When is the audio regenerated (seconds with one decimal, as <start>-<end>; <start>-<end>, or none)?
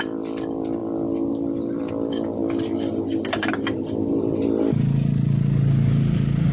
none